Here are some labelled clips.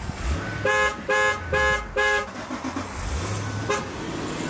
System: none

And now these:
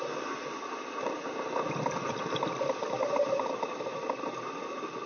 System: none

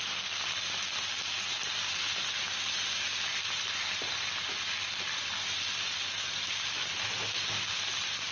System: none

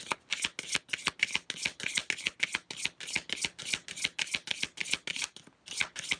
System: none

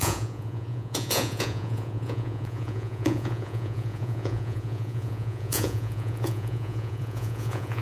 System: vocoder, Vocos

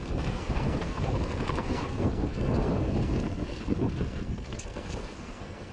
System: codec, SNAC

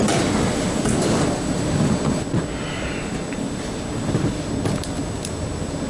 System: none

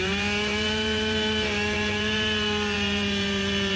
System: vocoder, BigVGAN v2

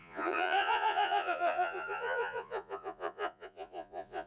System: vocoder, Vocos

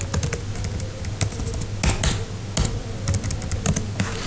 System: none